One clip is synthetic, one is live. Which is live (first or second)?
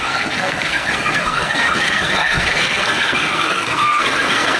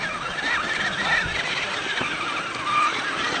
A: second